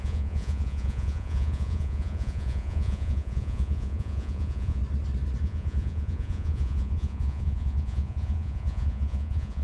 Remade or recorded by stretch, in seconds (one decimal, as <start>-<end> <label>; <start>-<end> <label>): 0.0-4.8 remade; 4.8-5.4 recorded; 5.4-9.6 remade